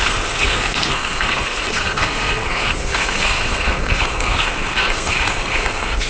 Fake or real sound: fake